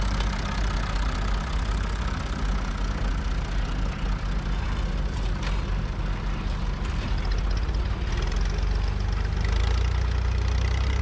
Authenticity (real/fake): real